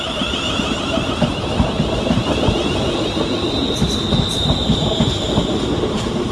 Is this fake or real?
fake